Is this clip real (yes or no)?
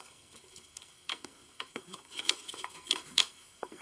no